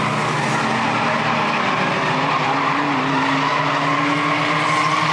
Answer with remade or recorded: recorded